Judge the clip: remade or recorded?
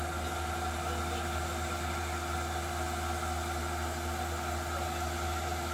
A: recorded